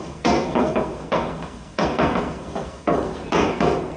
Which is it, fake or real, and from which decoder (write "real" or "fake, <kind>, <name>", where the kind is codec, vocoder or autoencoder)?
fake, codec, SNAC